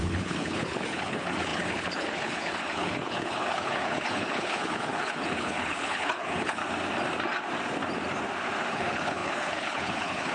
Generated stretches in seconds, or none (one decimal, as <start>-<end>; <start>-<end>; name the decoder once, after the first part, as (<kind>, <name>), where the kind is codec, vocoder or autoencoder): 0.0-6.6 (codec, HILCodec); 8.7-10.3

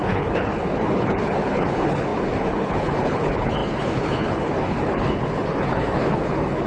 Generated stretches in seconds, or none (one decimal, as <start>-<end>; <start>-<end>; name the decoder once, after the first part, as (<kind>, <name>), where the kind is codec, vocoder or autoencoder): 0.0-6.7 (codec, HILCodec)

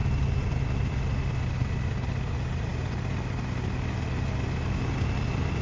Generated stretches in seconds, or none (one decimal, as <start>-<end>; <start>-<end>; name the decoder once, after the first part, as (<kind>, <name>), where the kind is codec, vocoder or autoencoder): none

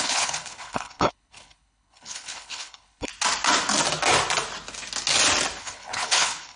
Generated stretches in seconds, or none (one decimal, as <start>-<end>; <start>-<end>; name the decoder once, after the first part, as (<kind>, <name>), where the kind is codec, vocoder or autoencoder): 0.0-3.1 (codec, HILCodec); 5.6-6.6

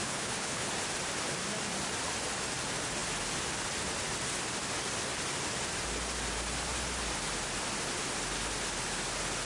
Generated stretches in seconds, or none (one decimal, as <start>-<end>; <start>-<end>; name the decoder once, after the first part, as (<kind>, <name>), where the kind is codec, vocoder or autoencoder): 0.0-0.7 (codec, HILCodec)